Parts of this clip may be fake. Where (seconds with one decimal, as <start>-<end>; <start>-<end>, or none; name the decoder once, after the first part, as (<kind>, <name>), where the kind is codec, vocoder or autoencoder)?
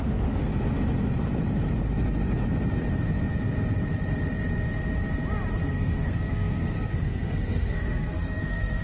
0.0-0.5 (codec, SNAC); 5.7-8.8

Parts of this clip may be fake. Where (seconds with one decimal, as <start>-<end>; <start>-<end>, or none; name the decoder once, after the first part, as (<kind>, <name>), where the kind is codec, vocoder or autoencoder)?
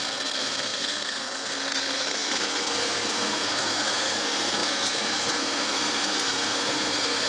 0.0-7.3 (codec, SNAC)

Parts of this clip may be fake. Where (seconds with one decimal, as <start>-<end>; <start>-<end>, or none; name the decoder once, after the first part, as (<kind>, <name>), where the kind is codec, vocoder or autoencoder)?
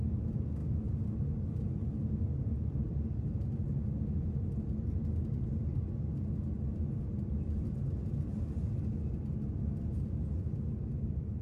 none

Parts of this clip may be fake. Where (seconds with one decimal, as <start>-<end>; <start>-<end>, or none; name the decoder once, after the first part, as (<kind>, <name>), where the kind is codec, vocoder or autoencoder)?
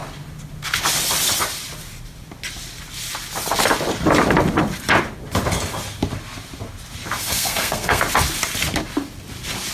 7.2-8.0 (codec, SNAC)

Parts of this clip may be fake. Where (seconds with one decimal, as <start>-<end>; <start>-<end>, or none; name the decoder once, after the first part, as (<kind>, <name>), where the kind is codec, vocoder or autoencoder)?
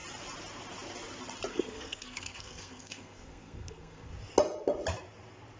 1.5-4.1 (codec, SNAC)